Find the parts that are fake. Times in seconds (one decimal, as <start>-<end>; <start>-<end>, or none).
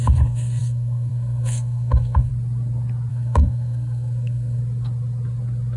0.0-2.3; 3.1-4.6